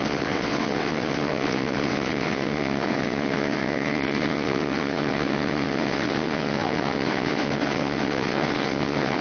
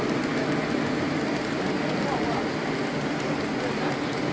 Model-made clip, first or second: first